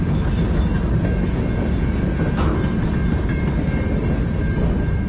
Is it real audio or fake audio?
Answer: real